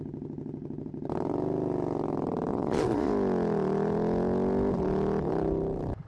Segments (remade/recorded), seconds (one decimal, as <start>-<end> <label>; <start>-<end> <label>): 0.0-2.5 recorded; 2.5-3.1 remade; 3.1-6.1 recorded